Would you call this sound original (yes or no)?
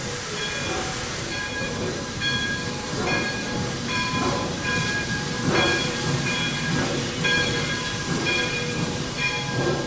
no